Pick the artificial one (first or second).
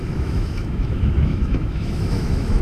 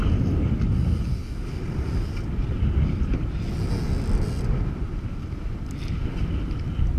first